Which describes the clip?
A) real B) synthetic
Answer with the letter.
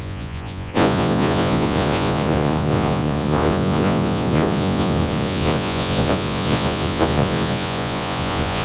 B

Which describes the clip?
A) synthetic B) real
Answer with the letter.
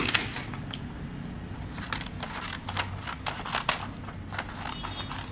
B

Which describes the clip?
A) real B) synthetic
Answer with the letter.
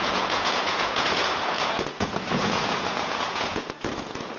B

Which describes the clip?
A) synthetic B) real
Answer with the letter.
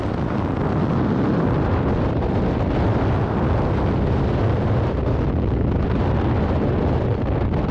B